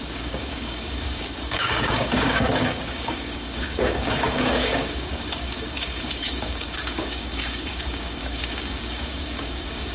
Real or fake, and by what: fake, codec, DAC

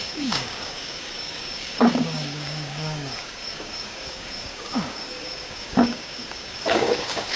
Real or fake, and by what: fake, codec, DAC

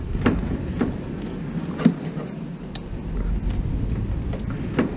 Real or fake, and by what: real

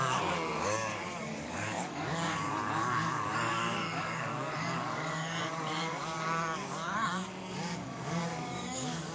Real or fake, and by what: fake, codec, DAC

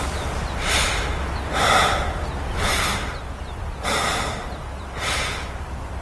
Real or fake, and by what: real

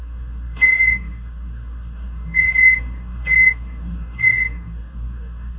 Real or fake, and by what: fake, codec, DAC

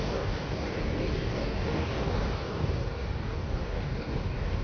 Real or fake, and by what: fake, codec, DAC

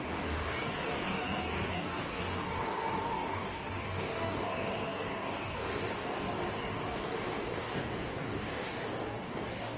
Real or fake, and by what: fake, codec, DAC